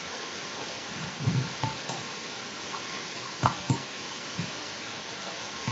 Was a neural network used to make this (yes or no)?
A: yes